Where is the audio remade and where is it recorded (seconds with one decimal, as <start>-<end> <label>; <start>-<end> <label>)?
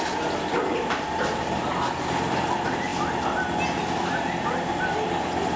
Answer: 0.0-5.6 recorded